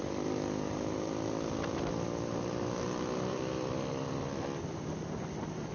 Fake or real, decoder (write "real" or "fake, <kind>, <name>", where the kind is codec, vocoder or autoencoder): fake, vocoder, BigVGAN v2